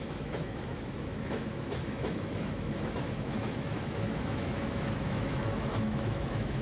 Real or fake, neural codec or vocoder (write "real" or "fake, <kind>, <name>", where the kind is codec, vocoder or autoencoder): fake, autoencoder, DAC-VAE